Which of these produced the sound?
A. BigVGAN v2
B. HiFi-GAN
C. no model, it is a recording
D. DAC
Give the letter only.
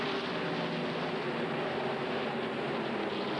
C